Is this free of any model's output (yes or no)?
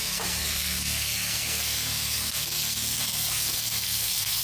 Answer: no